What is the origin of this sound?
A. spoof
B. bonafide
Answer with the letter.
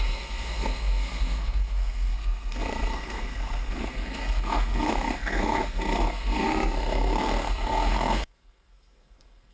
A